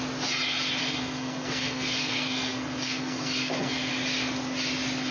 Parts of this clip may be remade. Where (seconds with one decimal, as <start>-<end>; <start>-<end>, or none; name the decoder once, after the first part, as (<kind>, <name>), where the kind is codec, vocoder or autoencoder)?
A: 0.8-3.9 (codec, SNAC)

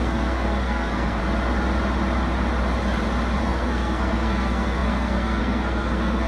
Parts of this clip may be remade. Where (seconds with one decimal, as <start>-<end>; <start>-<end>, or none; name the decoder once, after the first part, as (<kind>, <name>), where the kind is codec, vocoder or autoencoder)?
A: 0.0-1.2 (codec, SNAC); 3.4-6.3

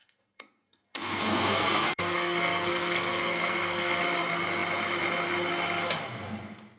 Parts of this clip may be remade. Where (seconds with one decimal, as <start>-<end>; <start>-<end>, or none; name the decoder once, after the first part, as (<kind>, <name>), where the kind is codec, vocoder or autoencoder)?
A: 0.0-4.0 (codec, SNAC)

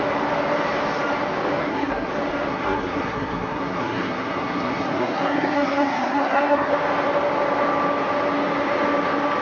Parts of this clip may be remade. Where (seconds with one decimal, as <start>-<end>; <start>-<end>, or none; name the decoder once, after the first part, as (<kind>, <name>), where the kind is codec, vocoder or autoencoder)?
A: 1.6-2.1 (codec, SNAC); 2.5-6.7

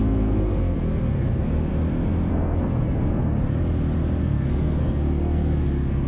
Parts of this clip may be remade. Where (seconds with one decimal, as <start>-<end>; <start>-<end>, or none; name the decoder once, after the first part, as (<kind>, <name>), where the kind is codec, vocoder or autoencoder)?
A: 0.0-1.7 (codec, SNAC); 2.3-3.2; 4.2-6.1